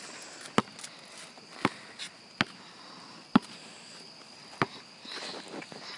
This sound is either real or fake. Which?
real